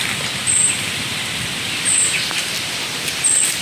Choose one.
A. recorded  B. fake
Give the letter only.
B